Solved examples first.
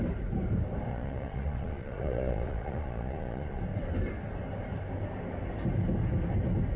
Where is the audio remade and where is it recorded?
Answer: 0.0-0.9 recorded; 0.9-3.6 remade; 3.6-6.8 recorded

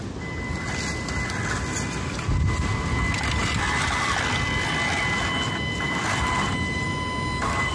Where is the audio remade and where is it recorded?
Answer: 0.0-7.7 recorded